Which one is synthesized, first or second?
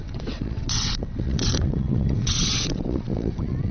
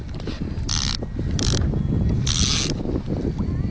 first